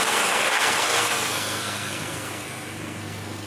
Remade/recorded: remade